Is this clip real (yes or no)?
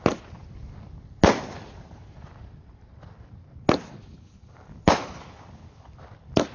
yes